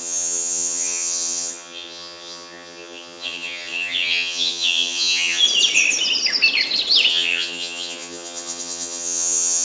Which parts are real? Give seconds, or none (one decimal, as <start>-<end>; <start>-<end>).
5.4-7.1